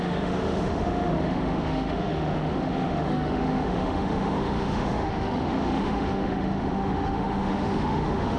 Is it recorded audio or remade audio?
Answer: remade